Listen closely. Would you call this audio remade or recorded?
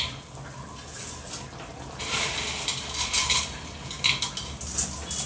recorded